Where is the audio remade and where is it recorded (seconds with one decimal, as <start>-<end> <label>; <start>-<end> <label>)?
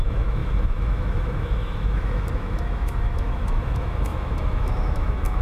0.0-5.4 remade